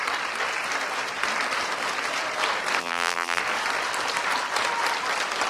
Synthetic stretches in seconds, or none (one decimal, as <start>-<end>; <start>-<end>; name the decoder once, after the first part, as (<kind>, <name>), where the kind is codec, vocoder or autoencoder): 2.8-3.4 (vocoder, BigVGAN v2)